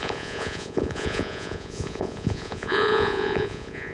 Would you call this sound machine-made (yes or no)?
yes